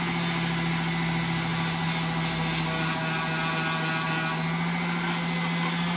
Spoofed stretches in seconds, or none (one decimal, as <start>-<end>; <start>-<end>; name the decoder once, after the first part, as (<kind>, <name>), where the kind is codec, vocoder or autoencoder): none